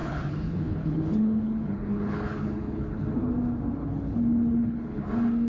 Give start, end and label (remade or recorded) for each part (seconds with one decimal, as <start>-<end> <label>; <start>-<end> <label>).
0.0-3.3 remade; 3.3-3.8 recorded; 3.8-5.0 remade; 5.0-5.5 recorded